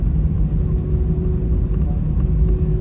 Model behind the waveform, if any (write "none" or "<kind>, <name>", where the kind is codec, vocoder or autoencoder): none